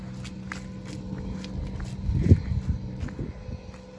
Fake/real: real